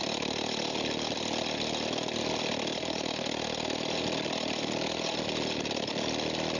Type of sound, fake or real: real